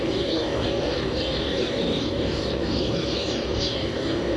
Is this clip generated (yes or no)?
yes